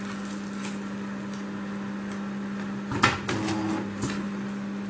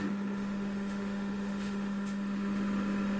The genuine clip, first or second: first